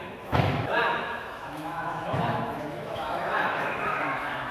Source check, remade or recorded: remade